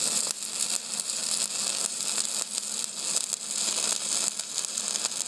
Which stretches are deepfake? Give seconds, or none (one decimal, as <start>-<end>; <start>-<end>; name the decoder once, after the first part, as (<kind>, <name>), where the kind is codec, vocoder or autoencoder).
none